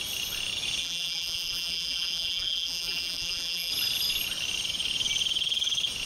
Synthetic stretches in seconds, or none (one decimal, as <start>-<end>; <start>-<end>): 0.8-3.7